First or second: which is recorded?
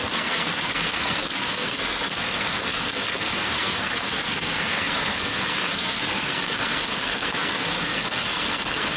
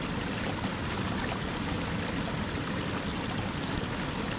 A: second